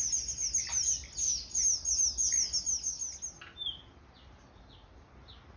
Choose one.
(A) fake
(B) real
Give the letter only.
B